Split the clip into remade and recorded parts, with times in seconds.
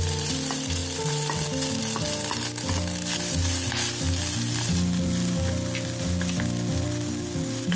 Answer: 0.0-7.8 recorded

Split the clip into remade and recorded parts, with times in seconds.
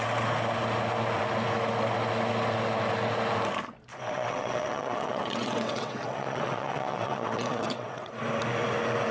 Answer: 0.0-3.9 recorded; 3.9-8.1 remade; 8.1-9.1 recorded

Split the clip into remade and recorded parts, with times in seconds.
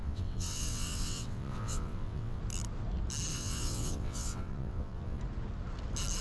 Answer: 0.0-2.4 remade; 2.4-3.3 recorded; 3.3-5.2 remade; 5.2-6.2 recorded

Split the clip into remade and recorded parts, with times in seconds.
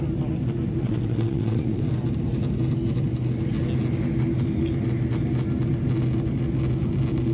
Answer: 0.0-0.8 recorded; 0.8-1.8 remade; 1.8-7.3 recorded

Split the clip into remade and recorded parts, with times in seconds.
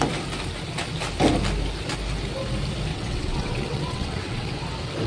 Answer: 0.0-2.9 recorded; 2.9-4.6 remade; 4.6-5.1 recorded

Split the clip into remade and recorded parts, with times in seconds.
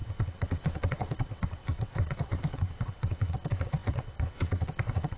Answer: 0.0-5.2 remade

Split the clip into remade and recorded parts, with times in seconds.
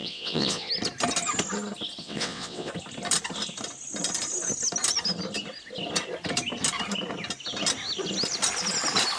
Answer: 0.0-0.7 remade; 0.7-2.0 recorded; 2.0-2.7 remade; 2.7-9.2 recorded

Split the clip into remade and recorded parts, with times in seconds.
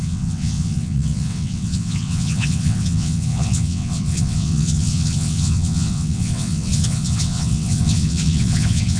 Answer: 0.0-9.0 remade